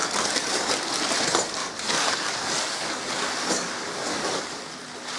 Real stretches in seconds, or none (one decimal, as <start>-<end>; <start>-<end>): 0.7-1.6; 4.7-5.2